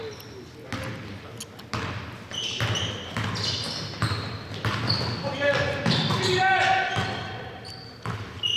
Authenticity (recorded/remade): recorded